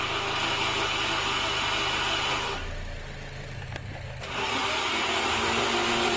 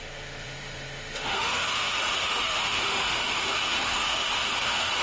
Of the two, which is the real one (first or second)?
first